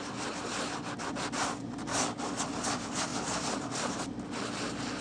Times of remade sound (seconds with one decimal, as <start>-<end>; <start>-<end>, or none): 1.9-2.4